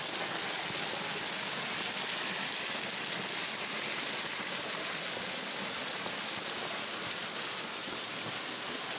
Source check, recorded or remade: recorded